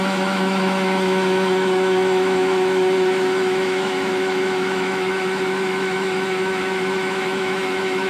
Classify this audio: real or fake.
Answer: fake